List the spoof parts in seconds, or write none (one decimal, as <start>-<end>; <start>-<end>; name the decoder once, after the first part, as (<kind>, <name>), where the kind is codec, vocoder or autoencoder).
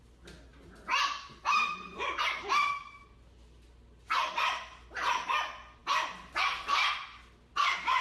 0.5-2.7 (vocoder, BigVGAN v2)